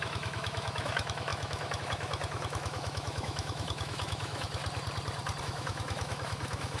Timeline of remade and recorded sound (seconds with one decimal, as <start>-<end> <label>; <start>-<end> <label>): 0.0-4.6 remade; 4.6-5.4 recorded; 5.4-6.8 remade